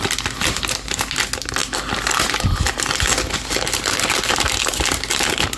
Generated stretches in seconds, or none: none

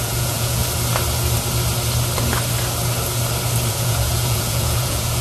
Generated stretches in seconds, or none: 0.0-0.6 (vocoder, Vocos); 3.7-5.2

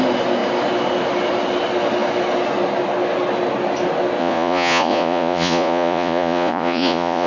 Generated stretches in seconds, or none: 4.2-7.3 (vocoder, Vocos)

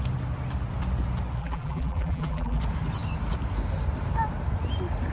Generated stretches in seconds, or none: 1.4-2.6 (vocoder, BigVGAN v2)

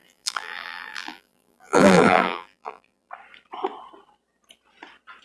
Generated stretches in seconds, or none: 0.0-3.1 (vocoder, BigVGAN v2)

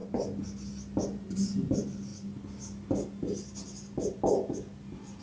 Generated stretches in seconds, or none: none

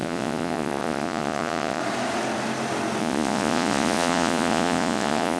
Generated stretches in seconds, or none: 0.0-1.8 (vocoder, Vocos); 3.0-5.4